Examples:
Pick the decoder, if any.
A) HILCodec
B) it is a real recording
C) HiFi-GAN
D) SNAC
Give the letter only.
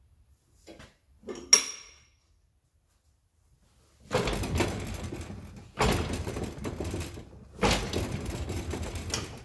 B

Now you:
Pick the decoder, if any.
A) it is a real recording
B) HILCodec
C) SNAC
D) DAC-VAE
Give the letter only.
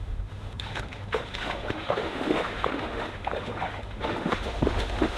D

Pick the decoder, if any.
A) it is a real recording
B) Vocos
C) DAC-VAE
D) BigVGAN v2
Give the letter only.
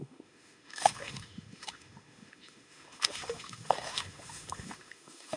C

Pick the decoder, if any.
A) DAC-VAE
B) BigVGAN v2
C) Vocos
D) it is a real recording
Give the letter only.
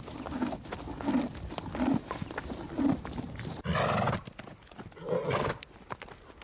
D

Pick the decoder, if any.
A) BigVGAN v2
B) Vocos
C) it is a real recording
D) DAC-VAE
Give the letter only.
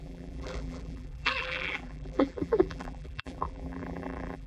A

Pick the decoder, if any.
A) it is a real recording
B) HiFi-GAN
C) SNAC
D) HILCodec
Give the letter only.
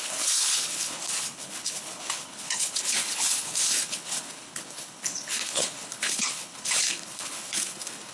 D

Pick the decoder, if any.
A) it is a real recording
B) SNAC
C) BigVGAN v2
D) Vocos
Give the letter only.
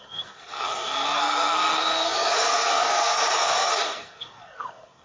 B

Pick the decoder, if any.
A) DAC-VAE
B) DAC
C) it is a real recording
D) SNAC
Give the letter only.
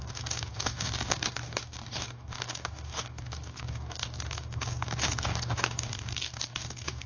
B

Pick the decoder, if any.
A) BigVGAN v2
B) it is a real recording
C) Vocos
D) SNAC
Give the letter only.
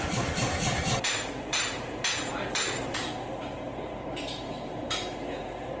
A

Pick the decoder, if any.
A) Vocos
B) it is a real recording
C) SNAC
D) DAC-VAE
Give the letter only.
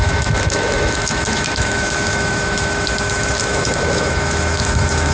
D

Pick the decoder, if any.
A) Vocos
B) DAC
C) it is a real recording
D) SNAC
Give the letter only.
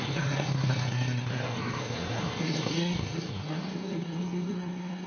D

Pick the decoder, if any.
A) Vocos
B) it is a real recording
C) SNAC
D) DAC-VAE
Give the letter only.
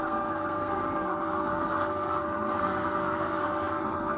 C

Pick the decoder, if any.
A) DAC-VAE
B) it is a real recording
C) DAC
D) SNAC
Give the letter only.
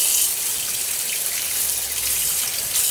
B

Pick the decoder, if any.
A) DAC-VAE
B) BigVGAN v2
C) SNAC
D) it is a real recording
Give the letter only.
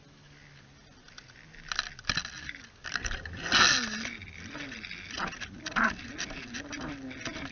D